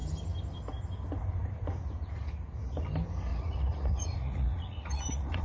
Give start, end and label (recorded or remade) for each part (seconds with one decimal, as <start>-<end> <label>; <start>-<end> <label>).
0.0-3.3 recorded; 3.3-5.4 remade